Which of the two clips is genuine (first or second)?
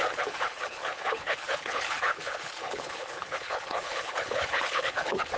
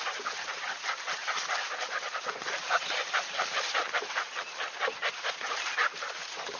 second